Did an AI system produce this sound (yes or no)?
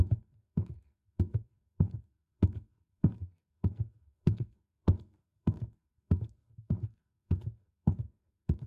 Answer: yes